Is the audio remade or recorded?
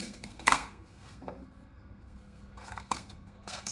remade